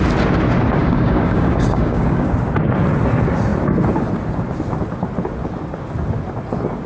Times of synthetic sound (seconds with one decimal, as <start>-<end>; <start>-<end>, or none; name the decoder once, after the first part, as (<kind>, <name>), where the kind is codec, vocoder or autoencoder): 0.8-2.3 (codec, DAC)